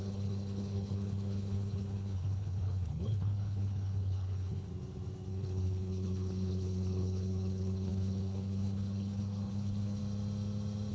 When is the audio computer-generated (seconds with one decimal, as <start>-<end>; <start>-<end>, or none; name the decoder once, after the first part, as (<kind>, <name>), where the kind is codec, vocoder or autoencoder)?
0.0-4.7 (codec, HILCodec); 5.3-10.0